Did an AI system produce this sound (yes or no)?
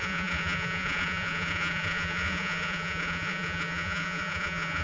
yes